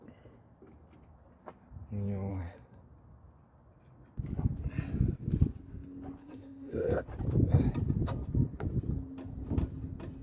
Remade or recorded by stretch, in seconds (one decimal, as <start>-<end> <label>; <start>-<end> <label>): 0.0-2.3 recorded; 2.3-2.8 remade; 2.8-6.2 recorded; 6.2-7.0 remade; 7.0-10.2 recorded